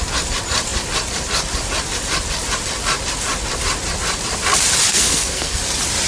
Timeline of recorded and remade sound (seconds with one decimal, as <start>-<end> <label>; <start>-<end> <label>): 0.0-4.9 recorded; 4.9-5.6 remade; 5.6-6.1 recorded